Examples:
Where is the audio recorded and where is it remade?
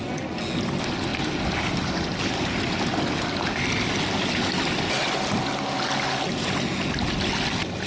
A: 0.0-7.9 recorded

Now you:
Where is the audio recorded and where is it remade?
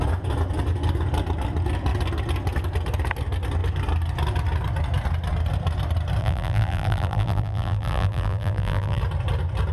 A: 0.0-6.2 recorded; 6.2-9.0 remade; 9.0-9.7 recorded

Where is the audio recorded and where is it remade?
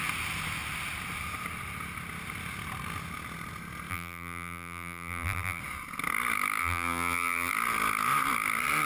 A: 0.0-3.9 recorded; 3.9-5.6 remade; 5.6-6.6 recorded; 6.6-7.5 remade; 7.5-8.9 recorded